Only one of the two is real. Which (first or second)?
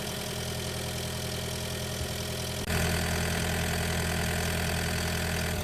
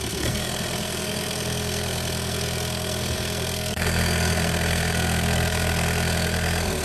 first